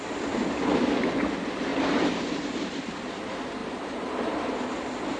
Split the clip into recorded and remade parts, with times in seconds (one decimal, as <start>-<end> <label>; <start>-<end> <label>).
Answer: 0.0-1.7 recorded; 1.7-2.8 remade; 2.8-3.6 recorded; 3.6-4.6 remade; 4.6-5.2 recorded